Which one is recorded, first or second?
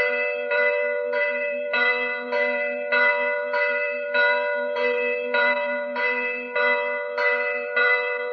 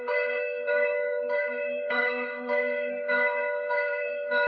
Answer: first